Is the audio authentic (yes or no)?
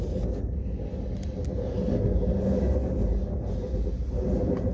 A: yes